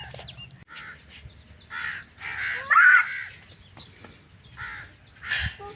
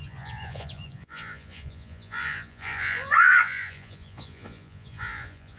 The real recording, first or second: first